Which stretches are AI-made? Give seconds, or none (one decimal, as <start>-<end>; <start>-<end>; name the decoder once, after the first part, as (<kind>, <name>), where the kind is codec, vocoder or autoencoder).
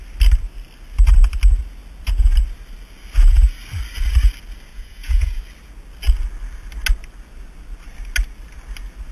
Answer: 4.7-5.4 (vocoder, Vocos)